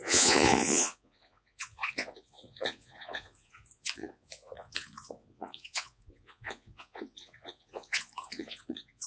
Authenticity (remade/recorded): remade